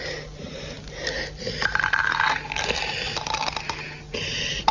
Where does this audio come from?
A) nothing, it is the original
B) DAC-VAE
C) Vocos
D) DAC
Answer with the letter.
A